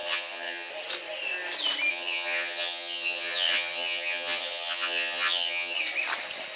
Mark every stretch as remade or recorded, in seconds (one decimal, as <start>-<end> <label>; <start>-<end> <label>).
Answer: 0.0-0.7 remade; 0.7-1.9 recorded; 1.9-5.8 remade; 5.8-6.6 recorded